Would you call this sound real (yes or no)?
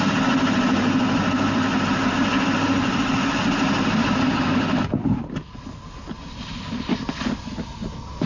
yes